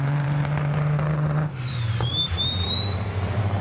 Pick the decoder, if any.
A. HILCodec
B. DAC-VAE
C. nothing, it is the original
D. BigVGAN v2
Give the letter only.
D